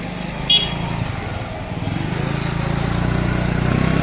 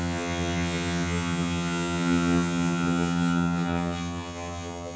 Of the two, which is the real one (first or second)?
first